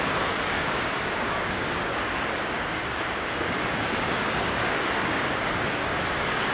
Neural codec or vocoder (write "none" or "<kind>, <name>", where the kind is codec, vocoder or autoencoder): codec, DAC